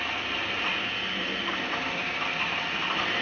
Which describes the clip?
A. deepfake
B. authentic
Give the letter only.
B